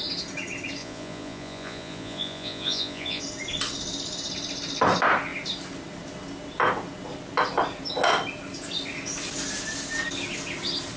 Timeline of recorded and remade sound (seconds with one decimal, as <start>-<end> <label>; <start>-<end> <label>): 0.0-0.8 recorded; 0.8-3.2 remade; 3.2-11.0 recorded